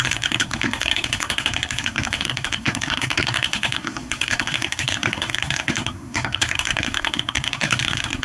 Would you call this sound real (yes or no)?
no